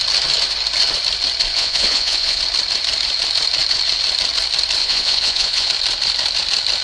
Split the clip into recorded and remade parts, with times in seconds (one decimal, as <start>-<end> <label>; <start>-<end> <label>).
0.0-1.5 recorded; 1.5-2.4 remade; 2.4-4.8 recorded; 4.8-5.7 remade; 5.7-6.8 recorded